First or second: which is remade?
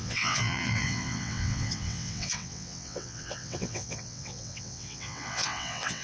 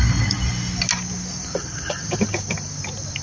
first